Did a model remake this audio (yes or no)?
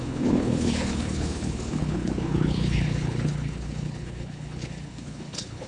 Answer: yes